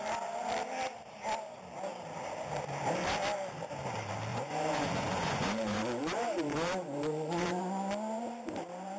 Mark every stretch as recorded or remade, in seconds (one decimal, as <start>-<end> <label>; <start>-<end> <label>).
0.0-4.3 recorded; 4.3-7.6 remade; 7.6-9.0 recorded